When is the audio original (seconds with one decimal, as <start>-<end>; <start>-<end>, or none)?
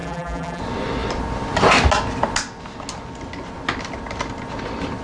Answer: 0.6-5.0